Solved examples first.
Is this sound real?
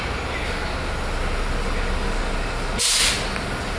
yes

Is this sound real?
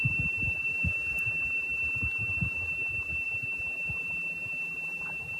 no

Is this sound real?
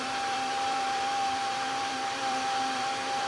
no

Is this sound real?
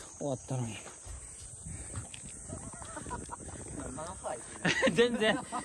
no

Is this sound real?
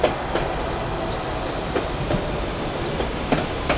yes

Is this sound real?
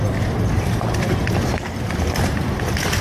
yes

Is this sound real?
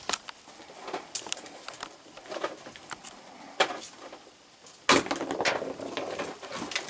yes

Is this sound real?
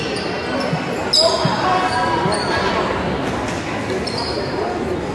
yes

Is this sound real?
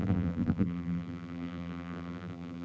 no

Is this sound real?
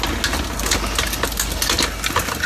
yes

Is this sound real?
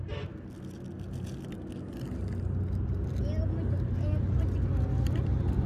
yes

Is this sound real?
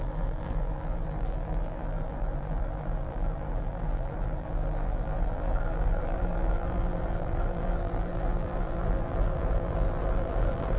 no